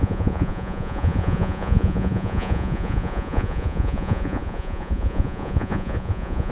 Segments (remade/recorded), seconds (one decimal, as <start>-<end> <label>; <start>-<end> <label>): 0.0-6.5 remade